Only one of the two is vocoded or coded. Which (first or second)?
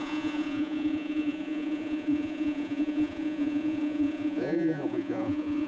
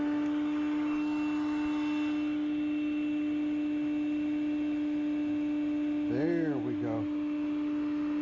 first